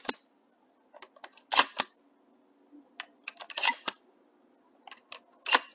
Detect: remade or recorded recorded